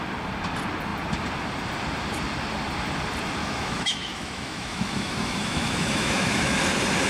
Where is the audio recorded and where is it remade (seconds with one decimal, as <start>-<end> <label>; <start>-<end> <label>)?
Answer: 0.0-3.4 recorded; 3.4-6.6 remade; 6.6-7.1 recorded